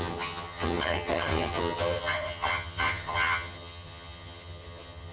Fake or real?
fake